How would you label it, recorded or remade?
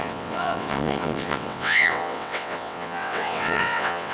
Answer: remade